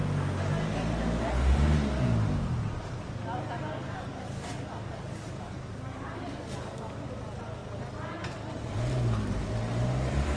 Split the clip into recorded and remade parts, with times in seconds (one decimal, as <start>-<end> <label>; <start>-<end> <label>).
0.0-3.7 recorded; 3.7-7.1 remade; 7.1-10.4 recorded

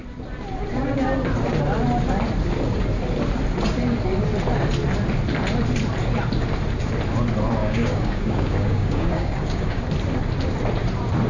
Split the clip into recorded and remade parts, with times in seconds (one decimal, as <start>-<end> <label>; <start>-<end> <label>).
0.0-7.6 recorded; 7.6-9.8 remade; 9.8-11.3 recorded

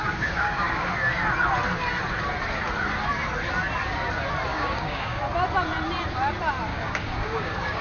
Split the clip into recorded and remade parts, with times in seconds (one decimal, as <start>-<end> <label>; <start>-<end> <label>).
0.0-0.9 remade; 0.9-4.5 recorded; 4.5-5.2 remade; 5.2-6.7 recorded; 6.7-7.8 remade

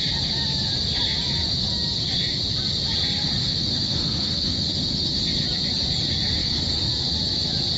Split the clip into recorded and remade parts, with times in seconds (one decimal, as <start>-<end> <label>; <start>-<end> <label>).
0.0-3.2 recorded; 3.2-5.2 remade; 5.2-6.4 recorded; 6.4-6.9 remade; 6.9-7.8 recorded

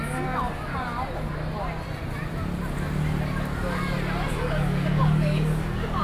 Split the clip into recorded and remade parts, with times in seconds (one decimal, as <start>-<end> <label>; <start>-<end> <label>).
0.0-0.7 remade; 0.7-4.3 recorded; 4.3-6.0 remade

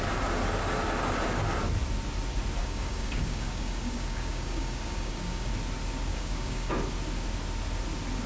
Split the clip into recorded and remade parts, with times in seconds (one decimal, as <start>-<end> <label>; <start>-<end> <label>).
0.0-2.6 recorded; 2.6-5.5 remade; 5.5-6.1 recorded; 6.1-6.7 remade; 6.7-8.3 recorded

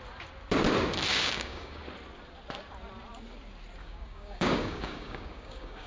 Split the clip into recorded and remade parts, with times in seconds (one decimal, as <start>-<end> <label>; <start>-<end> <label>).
0.0-1.1 recorded; 1.1-1.8 remade; 1.8-3.8 recorded; 3.8-5.9 remade